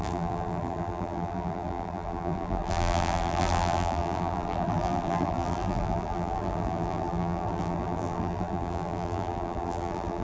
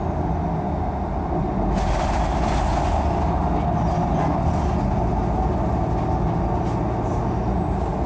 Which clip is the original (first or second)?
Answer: second